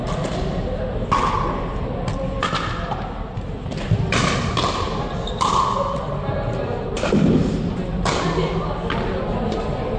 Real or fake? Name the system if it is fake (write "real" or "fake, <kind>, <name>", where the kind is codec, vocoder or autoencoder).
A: real